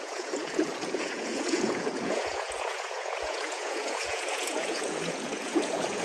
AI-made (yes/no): yes